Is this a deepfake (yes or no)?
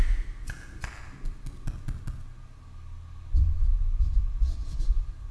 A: no